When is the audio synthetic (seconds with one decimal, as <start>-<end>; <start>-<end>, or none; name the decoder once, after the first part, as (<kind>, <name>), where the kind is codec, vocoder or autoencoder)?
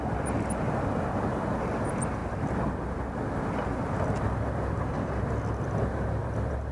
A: none